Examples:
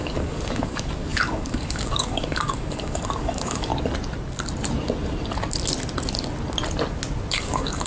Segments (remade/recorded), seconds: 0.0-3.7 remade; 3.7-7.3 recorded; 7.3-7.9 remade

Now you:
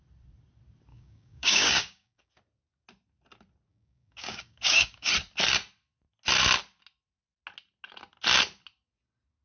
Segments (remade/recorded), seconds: 0.0-0.9 recorded; 0.9-2.3 remade; 2.3-3.7 recorded; 3.7-5.1 remade; 5.1-9.4 recorded